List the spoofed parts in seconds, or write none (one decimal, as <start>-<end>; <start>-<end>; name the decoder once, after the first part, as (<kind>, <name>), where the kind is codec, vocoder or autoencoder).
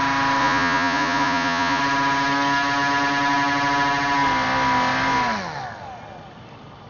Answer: 0.4-1.8 (vocoder, Vocos)